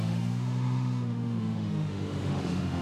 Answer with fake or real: fake